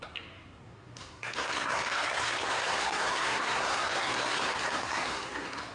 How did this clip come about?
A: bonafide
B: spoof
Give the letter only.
B